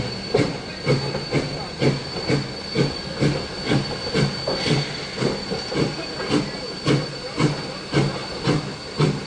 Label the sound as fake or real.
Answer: real